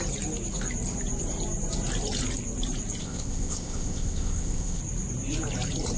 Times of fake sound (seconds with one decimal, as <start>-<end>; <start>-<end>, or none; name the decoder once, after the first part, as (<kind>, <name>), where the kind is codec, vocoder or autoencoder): 3.0-4.8 (codec, ZipCodec)